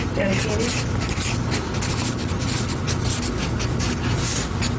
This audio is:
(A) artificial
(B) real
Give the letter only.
B